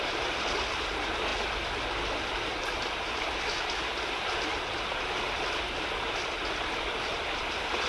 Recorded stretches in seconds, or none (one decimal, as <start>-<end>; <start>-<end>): 0.0-7.9